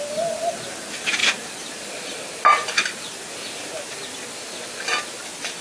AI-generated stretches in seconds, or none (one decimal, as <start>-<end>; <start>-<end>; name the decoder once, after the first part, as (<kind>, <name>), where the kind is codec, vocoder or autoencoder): none